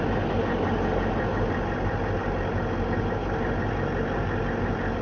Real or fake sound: real